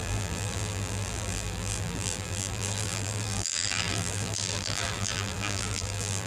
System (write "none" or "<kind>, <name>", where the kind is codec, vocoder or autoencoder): vocoder, BigVGAN v2